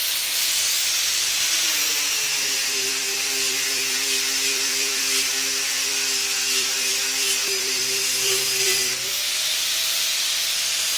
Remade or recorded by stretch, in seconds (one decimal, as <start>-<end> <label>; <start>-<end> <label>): 0.0-11.0 remade